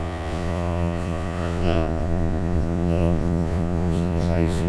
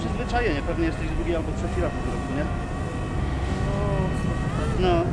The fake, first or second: first